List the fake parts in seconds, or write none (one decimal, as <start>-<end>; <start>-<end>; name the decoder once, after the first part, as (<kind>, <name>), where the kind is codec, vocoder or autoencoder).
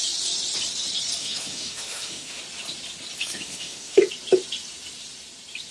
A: 1.2-2.4 (autoencoder, DAC-VAE); 3.2-4.0